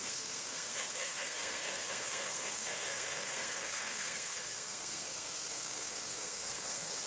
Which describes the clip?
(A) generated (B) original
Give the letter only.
A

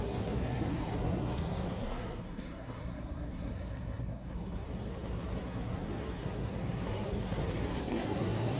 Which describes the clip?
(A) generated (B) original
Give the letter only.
A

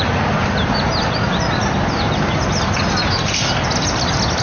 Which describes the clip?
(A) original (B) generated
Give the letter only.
A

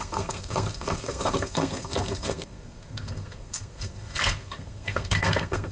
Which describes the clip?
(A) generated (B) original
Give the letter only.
A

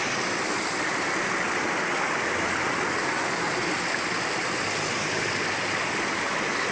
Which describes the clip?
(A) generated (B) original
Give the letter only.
B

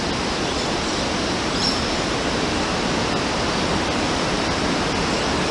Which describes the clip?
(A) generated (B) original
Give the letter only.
B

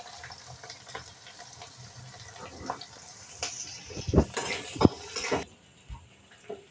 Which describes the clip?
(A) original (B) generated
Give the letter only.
A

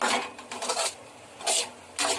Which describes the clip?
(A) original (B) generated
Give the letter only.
A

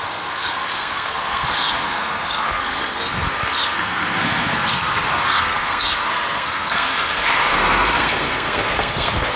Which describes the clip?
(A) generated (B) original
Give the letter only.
A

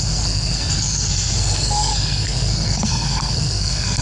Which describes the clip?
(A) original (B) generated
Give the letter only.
B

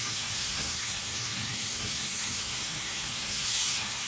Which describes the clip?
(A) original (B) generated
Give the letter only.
B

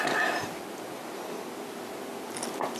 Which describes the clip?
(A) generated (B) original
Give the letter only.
B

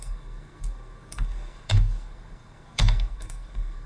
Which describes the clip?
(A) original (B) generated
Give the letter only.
B